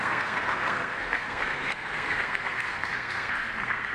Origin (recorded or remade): remade